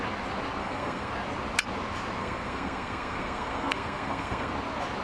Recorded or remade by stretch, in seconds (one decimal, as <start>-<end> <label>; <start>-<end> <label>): 0.0-0.6 recorded; 0.6-1.1 remade; 1.1-2.2 recorded; 2.2-4.5 remade; 4.5-5.0 recorded